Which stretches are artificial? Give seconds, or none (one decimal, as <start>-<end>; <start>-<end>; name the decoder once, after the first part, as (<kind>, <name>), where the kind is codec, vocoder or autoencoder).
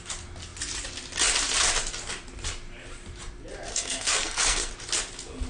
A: 3.7-4.7 (codec, SNAC)